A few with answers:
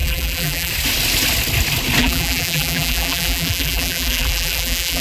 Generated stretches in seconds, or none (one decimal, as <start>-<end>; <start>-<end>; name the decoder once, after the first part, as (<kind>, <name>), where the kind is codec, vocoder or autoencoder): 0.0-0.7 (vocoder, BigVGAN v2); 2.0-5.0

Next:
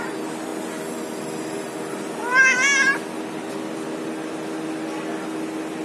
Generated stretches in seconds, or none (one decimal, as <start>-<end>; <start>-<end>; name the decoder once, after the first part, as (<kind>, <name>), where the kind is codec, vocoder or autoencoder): none

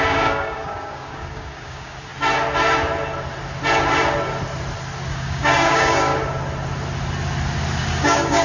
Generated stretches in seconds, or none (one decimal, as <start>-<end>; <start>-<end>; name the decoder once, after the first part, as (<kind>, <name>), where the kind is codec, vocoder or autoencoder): 0.0-2.1 (codec, DAC); 5.1-6.1; 7.8-8.4